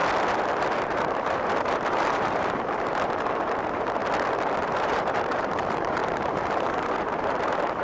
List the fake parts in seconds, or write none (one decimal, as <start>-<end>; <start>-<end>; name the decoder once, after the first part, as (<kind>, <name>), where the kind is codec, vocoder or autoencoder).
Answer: 0.6-4.0 (vocoder, BigVGAN v2); 4.7-7.8